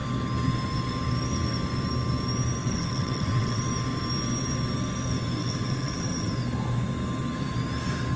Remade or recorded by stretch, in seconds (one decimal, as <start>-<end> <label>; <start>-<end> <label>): 0.0-2.6 recorded; 2.6-3.6 remade; 3.6-5.4 recorded; 5.4-6.3 remade; 6.3-8.2 recorded